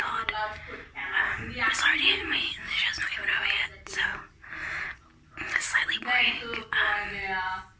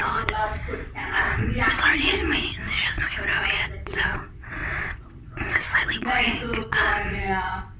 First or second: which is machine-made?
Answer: second